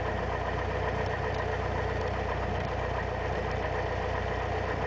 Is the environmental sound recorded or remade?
recorded